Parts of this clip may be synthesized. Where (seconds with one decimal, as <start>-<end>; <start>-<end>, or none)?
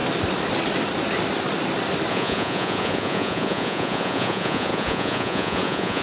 2.1-6.0